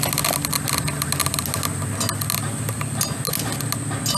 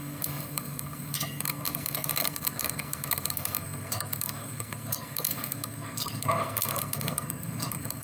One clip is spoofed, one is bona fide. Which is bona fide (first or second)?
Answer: first